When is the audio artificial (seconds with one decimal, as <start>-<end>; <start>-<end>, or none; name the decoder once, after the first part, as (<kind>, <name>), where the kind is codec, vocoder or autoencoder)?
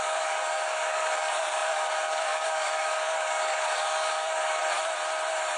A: 0.0-4.6 (codec, DAC)